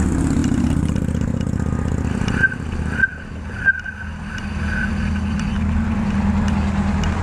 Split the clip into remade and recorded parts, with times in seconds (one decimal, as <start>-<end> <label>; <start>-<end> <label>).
0.0-7.2 recorded